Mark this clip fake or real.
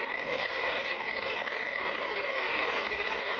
fake